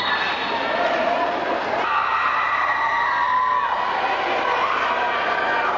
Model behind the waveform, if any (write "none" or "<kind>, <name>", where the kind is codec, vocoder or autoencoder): none